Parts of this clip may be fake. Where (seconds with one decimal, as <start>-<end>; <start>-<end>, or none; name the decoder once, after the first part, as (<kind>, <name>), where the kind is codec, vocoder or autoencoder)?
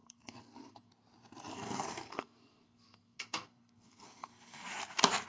0.0-0.9 (codec, SNAC); 1.5-4.7